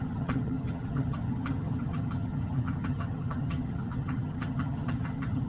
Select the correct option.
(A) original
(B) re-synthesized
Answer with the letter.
B